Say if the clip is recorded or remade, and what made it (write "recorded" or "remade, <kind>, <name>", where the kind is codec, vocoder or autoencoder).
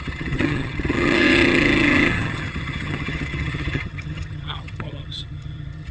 remade, vocoder, HiFi-GAN